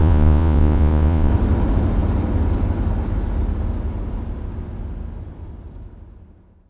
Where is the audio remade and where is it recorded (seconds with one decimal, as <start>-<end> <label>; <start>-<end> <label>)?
0.0-1.3 remade; 1.3-6.7 recorded